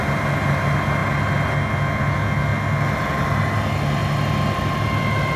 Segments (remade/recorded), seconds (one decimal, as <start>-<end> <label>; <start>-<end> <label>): 0.0-5.4 recorded